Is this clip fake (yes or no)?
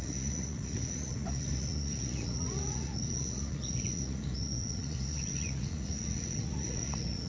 yes